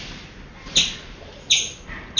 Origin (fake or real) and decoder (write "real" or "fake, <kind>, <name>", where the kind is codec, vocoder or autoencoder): real